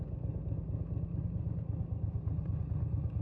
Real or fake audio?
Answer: real